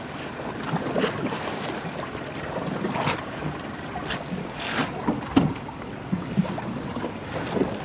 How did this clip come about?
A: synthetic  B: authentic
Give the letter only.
B